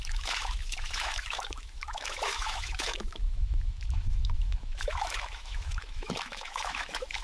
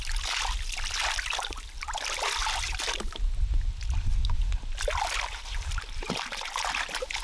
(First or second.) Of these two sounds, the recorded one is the second